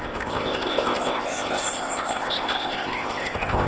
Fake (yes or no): yes